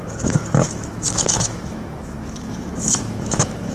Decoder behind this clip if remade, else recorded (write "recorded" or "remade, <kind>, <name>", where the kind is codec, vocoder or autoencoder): remade, autoencoder, DAC-VAE